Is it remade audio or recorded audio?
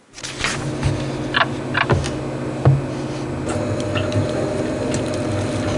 recorded